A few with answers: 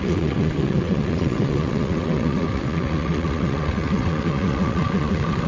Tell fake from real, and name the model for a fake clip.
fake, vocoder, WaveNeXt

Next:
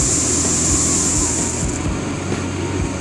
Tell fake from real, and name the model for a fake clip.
real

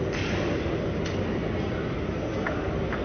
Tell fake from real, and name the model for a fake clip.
real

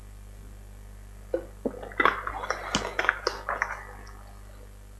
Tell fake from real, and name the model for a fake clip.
real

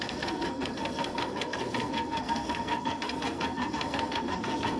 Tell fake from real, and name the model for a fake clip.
fake, codec, SNAC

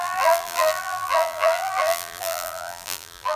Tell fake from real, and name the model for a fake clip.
fake, vocoder, BigVGAN v2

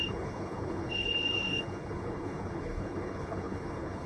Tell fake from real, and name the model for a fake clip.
fake, codec, HILCodec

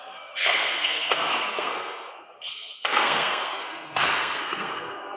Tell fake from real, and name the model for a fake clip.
fake, codec, SNAC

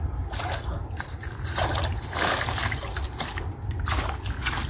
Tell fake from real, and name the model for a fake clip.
real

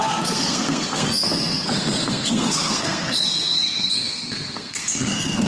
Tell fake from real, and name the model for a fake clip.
fake, codec, SNAC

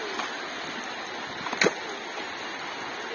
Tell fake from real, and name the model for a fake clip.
real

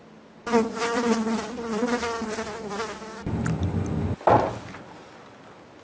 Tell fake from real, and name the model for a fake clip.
real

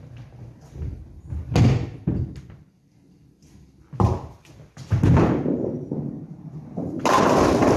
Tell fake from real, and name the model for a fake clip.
real